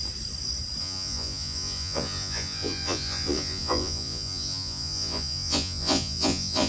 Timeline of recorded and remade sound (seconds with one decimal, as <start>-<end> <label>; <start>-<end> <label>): 0.0-0.8 recorded; 0.8-6.7 remade